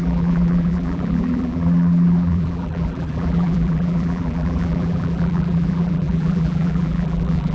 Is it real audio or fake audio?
fake